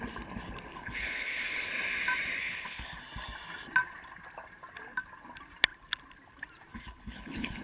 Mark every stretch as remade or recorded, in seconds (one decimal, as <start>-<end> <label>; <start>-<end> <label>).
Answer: 0.0-0.7 recorded; 0.7-1.7 remade; 1.7-2.4 recorded; 2.4-3.0 remade; 3.0-6.7 recorded; 6.7-7.6 remade